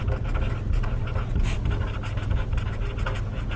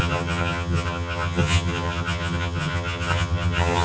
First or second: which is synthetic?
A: second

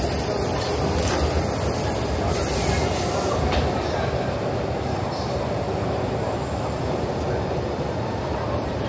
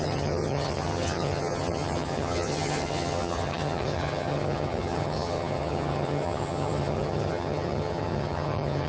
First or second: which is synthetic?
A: second